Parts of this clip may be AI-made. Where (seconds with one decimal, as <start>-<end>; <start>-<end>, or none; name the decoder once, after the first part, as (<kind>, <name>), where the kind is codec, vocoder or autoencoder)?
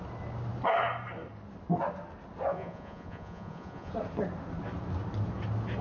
2.5-3.9 (vocoder, Vocos)